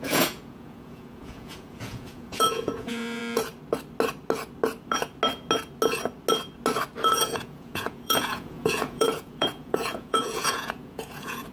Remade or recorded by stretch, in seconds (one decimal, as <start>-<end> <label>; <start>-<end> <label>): 0.0-3.2 remade; 3.2-7.0 recorded; 7.0-11.5 remade